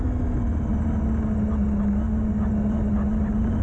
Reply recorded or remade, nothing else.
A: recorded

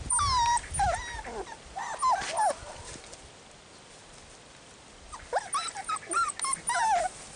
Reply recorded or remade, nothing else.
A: recorded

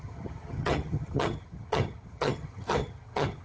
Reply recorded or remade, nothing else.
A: remade